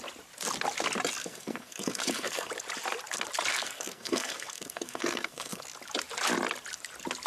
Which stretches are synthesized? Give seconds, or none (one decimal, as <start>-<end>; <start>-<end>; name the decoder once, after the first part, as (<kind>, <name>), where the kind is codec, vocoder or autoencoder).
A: 1.2-2.5 (codec, SNAC); 3.5-5.6